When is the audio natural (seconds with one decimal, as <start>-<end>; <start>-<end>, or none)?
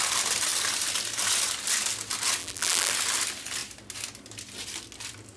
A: 0.0-2.4; 2.9-5.4